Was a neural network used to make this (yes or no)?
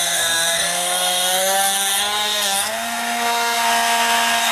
yes